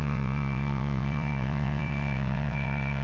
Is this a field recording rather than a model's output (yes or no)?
no